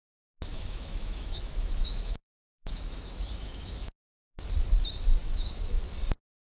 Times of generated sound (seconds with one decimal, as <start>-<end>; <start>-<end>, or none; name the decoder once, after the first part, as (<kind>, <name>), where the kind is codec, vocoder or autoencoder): 0.5-3.9 (autoencoder, DAC-VAE); 5.2-5.8